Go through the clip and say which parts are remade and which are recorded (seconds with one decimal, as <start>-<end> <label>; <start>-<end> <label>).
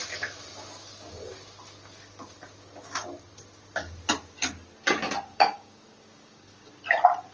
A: 0.0-5.3 recorded; 5.3-6.7 remade; 6.7-7.3 recorded